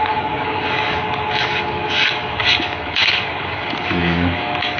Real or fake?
fake